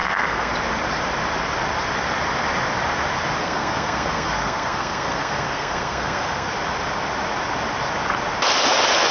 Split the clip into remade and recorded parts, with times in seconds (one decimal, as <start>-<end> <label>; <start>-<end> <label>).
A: 0.0-0.5 remade; 0.5-3.4 recorded; 3.4-6.5 remade; 6.5-9.1 recorded